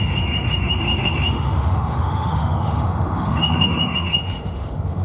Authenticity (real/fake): fake